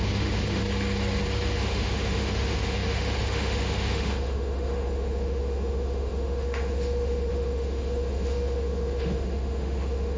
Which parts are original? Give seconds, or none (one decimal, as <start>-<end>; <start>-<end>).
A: 0.6-1.6